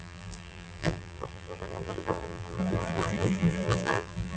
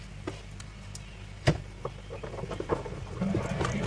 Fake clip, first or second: first